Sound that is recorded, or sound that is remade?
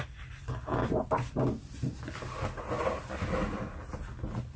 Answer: recorded